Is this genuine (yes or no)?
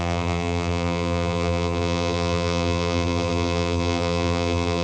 no